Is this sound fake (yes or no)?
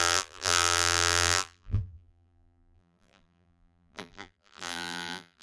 yes